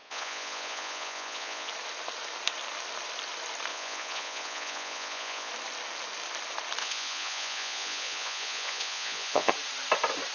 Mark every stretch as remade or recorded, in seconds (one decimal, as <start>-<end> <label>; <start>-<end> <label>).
0.0-1.7 remade; 1.7-3.7 recorded; 3.7-5.5 remade; 5.5-6.8 recorded; 6.8-9.5 remade; 9.5-10.3 recorded